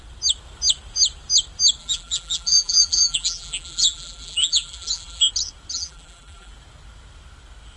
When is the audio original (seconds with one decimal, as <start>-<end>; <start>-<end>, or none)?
0.0-1.8; 5.3-5.7; 6.5-7.8